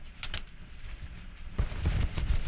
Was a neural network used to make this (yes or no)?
no